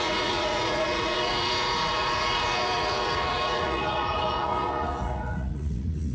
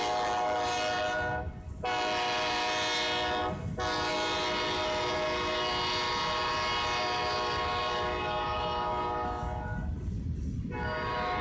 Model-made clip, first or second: first